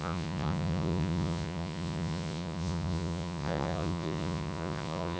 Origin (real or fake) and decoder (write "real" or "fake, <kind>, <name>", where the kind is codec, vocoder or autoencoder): fake, vocoder, Vocos